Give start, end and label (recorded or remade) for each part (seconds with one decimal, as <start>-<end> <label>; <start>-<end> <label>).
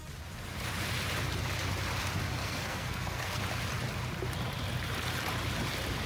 0.0-2.4 recorded; 2.4-3.4 remade; 3.4-6.1 recorded